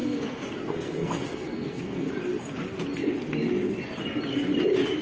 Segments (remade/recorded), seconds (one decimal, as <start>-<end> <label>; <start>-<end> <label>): 0.0-2.1 remade; 2.1-5.0 recorded